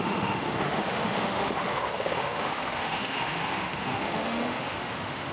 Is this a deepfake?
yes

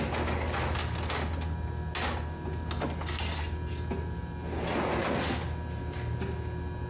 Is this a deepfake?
no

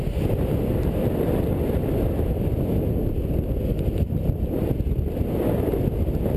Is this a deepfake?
no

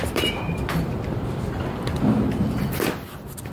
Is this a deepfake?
yes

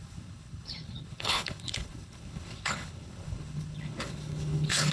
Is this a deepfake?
yes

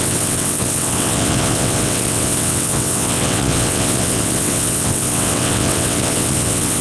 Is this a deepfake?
yes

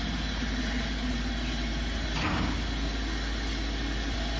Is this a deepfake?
no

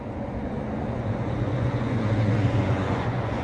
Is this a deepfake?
yes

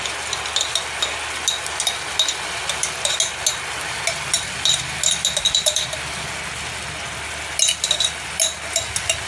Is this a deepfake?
no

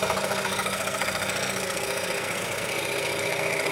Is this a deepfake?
yes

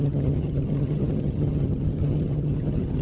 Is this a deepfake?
yes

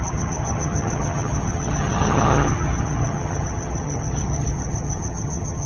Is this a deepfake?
yes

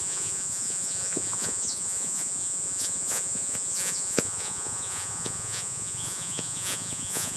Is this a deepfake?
yes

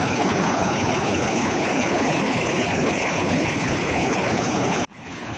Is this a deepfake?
yes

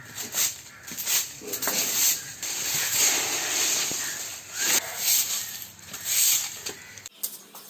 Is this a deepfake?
no